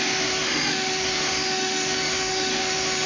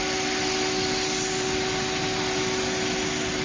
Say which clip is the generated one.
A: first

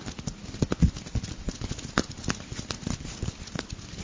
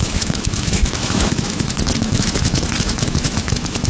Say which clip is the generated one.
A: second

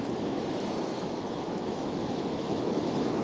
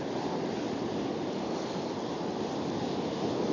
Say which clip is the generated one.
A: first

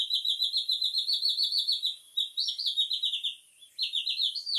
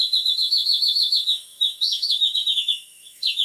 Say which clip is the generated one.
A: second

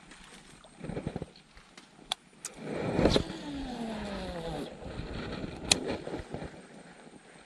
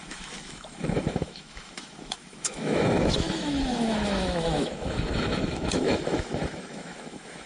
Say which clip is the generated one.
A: second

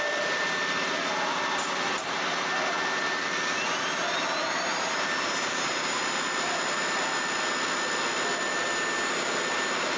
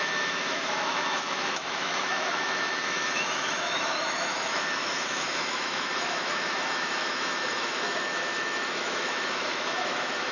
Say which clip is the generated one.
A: second